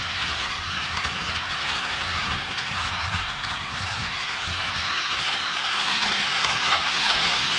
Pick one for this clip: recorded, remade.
remade